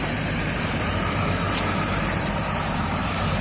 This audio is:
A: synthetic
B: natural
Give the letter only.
A